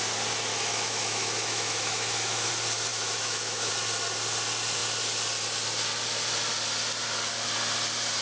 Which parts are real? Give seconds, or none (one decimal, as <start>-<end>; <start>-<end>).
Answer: 0.0-0.5; 2.5-2.9; 3.7-8.2